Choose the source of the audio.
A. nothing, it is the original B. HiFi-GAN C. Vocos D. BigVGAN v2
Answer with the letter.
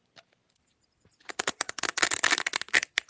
A